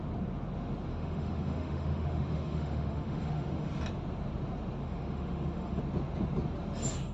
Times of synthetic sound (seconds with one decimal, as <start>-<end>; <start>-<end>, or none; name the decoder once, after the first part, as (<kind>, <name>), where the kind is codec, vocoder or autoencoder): 0.9-3.7 (autoencoder, DAC-VAE); 4.8-5.8